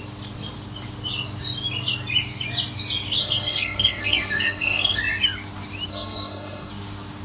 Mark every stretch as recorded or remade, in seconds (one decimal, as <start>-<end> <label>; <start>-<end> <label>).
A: 0.0-3.2 recorded; 3.2-5.0 remade; 5.0-5.9 recorded; 5.9-6.7 remade; 6.7-7.2 recorded